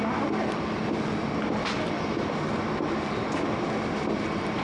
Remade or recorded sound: recorded